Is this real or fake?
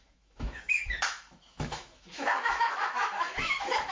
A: fake